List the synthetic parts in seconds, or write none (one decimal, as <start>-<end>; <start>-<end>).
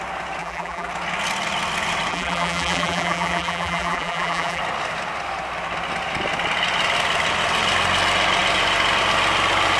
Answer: 0.4-0.9; 2.1-4.6